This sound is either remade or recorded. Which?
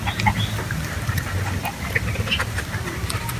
recorded